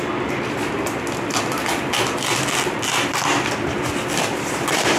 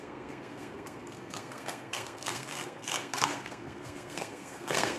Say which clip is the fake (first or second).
second